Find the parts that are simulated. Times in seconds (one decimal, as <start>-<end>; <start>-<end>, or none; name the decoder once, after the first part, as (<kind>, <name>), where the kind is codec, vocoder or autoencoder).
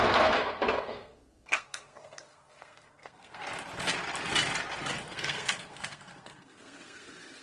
0.0-3.4 (codec, SNAC); 5.1-7.4